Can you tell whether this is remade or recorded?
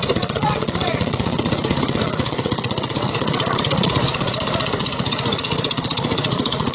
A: remade